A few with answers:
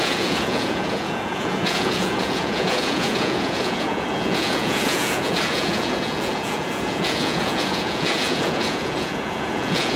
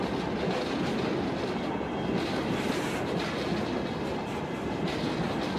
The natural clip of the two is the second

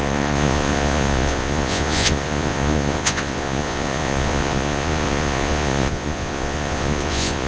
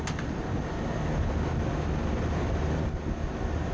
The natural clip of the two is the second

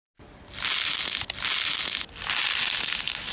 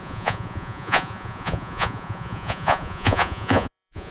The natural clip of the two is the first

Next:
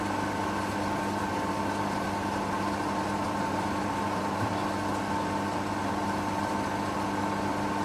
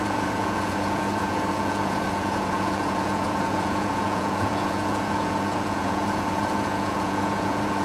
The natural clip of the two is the first